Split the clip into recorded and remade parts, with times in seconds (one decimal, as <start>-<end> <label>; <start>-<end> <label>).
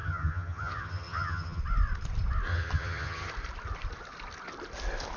0.0-1.6 remade; 1.6-2.5 recorded; 2.5-3.3 remade; 3.3-5.2 recorded